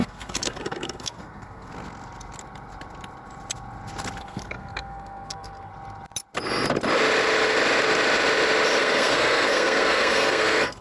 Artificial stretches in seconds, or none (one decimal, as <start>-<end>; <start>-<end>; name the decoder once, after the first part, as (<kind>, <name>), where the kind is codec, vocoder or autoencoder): 0.0-1.7 (codec, SNAC); 4.2-5.7; 8.8-10.8